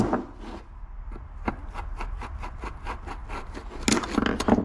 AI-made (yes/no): no